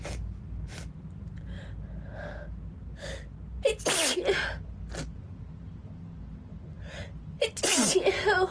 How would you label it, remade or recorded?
recorded